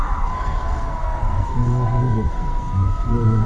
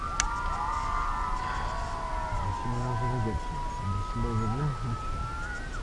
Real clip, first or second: second